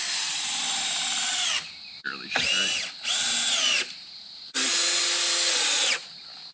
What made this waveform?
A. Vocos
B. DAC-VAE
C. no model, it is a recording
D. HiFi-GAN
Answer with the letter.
C